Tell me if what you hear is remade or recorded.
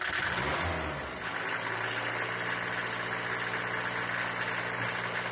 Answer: recorded